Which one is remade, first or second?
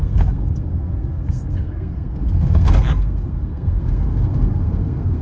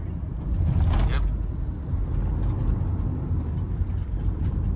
first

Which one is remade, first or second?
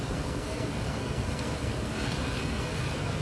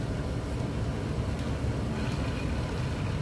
first